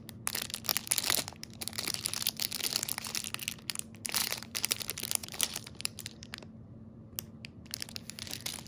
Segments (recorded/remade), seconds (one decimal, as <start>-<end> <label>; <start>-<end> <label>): 0.0-4.2 recorded; 4.2-4.8 remade; 4.8-5.2 recorded; 5.2-6.0 remade; 6.0-8.7 recorded